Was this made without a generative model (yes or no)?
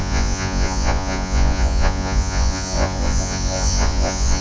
no